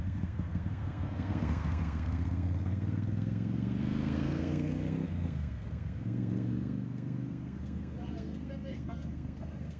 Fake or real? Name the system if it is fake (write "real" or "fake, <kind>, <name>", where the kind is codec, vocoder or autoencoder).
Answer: fake, codec, SNAC